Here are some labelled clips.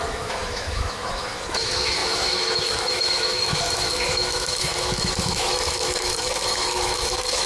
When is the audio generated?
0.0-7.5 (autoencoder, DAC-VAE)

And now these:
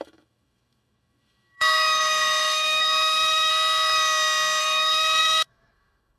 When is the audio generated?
0.0-3.5 (autoencoder, DAC-VAE); 4.6-6.2

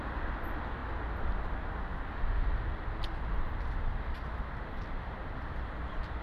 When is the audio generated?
none

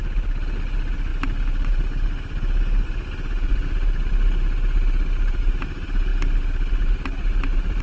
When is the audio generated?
none

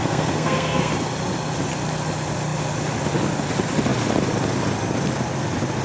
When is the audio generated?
0.0-0.9 (codec, SNAC)

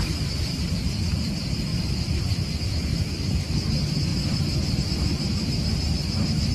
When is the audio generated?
1.7-2.2 (vocoder, BigVGAN v2); 2.9-3.4